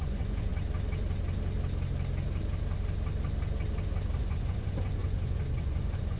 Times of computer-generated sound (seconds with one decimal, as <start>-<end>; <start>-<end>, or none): 0.0-0.5; 4.2-6.2